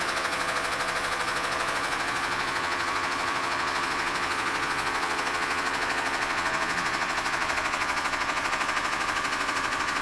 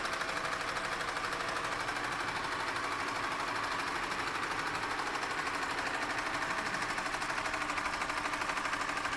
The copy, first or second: first